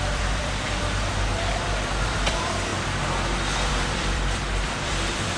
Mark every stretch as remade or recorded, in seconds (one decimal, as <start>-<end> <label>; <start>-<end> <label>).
0.0-1.3 remade; 1.3-2.1 recorded; 2.1-2.7 remade; 2.7-3.7 recorded; 3.7-5.4 remade